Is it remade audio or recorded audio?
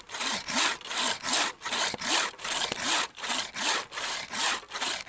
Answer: recorded